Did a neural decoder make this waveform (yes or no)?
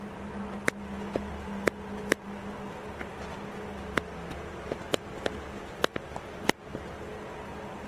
no